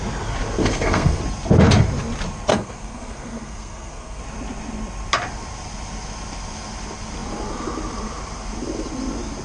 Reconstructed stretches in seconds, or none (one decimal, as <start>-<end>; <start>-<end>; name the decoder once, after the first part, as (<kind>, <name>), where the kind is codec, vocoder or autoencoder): 0.6-1.2 (codec, SNAC); 2.5-4.2